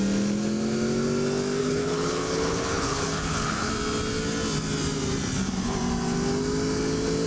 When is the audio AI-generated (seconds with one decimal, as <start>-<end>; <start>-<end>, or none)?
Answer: 1.6-3.7